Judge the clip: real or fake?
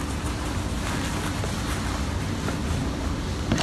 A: real